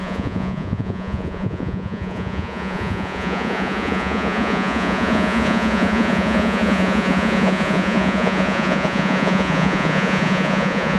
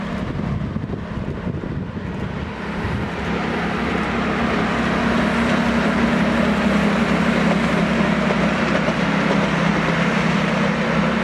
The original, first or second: second